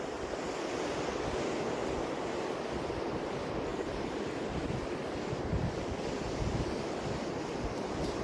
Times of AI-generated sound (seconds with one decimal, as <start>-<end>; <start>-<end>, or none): 3.7-4.5